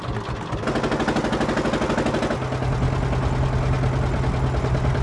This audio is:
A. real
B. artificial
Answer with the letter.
A